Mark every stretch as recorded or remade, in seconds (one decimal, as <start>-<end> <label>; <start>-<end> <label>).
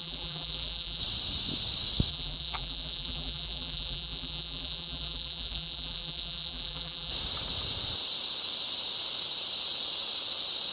0.0-1.0 remade; 1.0-2.1 recorded; 2.1-7.1 remade; 7.1-10.7 recorded